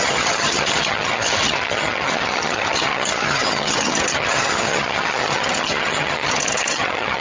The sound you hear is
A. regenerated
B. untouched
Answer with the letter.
A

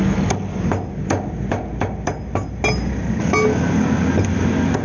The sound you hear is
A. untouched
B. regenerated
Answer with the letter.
A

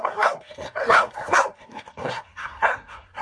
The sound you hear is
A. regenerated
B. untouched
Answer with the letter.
A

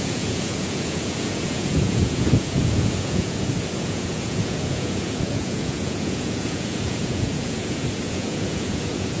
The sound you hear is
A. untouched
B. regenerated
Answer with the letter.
B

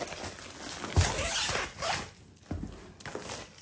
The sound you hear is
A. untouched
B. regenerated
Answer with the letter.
A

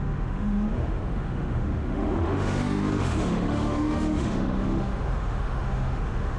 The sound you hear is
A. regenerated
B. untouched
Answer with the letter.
A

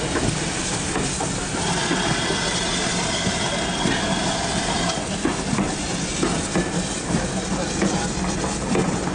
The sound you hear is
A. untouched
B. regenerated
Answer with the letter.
A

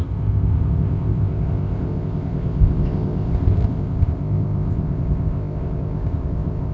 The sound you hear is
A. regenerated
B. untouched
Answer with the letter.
A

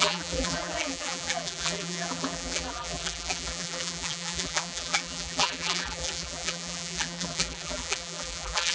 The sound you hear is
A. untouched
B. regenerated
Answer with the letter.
B